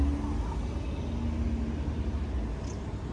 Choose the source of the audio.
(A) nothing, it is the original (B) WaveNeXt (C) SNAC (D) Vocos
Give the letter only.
A